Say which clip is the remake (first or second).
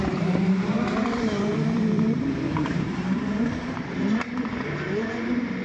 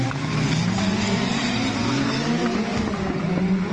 first